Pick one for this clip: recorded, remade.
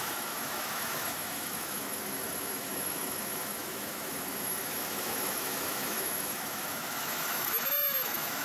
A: remade